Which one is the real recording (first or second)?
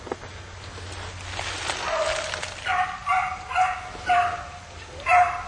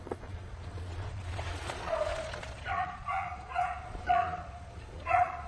first